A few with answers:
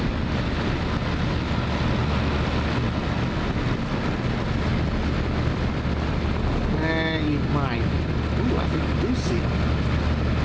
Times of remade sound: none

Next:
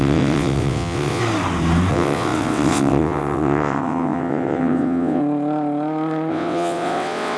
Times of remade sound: 0.0-1.2 (vocoder, WaveNeXt); 1.9-5.2; 6.3-7.4